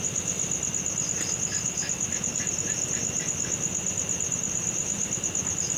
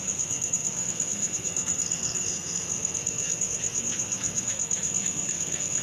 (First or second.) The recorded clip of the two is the first